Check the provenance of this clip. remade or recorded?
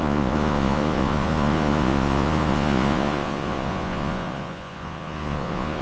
remade